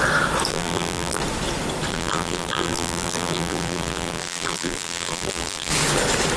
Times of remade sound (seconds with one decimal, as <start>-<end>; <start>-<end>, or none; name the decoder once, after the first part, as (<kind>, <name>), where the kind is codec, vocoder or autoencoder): 0.5-1.2 (vocoder, BigVGAN v2); 1.9-5.7